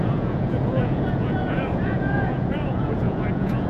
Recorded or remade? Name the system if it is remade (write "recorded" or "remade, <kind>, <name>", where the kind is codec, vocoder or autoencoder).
remade, vocoder, Vocos